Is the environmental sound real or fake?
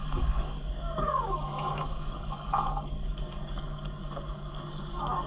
fake